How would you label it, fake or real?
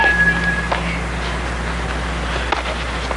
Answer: real